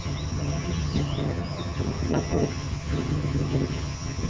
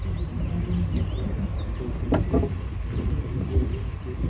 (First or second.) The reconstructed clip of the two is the first